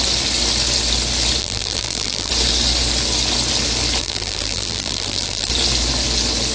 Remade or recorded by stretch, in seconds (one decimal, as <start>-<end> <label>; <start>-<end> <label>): 0.0-1.4 recorded; 1.4-2.3 remade; 2.3-4.0 recorded; 4.0-5.5 remade; 5.5-6.5 recorded